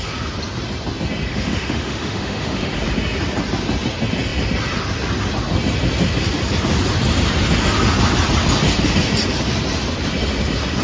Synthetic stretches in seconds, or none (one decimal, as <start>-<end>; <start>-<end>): 1.3-2.7